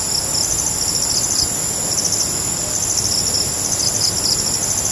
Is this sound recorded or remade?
recorded